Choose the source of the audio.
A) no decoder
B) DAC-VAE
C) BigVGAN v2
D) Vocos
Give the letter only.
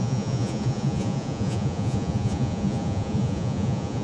D